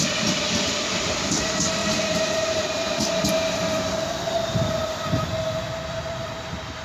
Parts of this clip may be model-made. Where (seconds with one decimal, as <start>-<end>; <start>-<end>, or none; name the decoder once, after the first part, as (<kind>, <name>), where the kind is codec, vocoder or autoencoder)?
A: none